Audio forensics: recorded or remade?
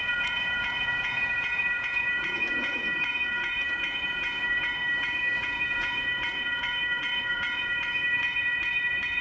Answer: remade